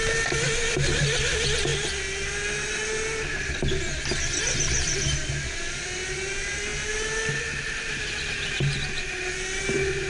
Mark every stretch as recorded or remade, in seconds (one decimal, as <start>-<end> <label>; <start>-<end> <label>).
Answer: 0.0-10.1 recorded